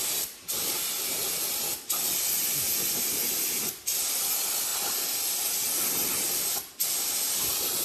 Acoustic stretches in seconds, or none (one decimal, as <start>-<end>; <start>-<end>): 0.0-7.8